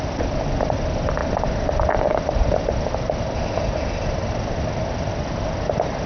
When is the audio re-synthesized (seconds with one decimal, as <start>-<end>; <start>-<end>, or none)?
none